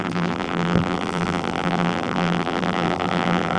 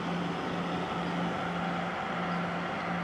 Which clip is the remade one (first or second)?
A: first